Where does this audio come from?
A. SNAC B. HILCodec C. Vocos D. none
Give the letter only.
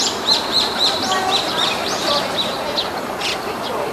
D